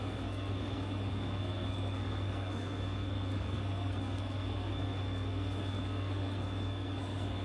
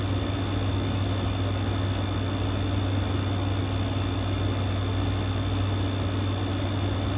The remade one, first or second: first